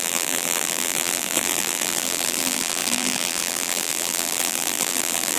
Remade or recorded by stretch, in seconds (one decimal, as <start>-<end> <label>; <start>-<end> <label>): 0.0-5.4 remade